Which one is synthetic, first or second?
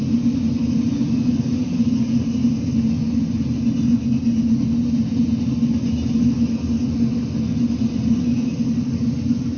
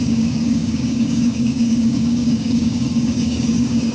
second